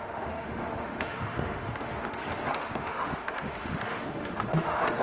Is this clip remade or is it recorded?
remade